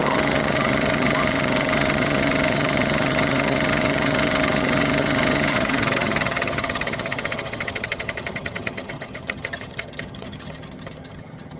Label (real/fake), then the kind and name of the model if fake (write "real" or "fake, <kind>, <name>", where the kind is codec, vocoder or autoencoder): fake, vocoder, HiFi-GAN